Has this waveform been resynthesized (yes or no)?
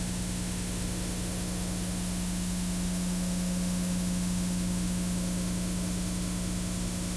yes